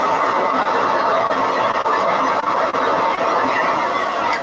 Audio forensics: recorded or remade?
recorded